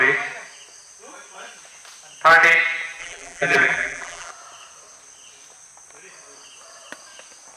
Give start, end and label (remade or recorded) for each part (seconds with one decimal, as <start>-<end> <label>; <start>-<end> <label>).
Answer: 0.0-3.0 recorded; 3.0-4.3 remade; 4.3-7.6 recorded